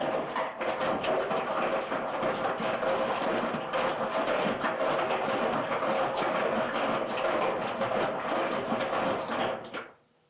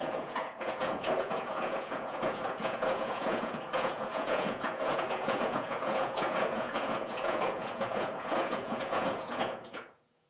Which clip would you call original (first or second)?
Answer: first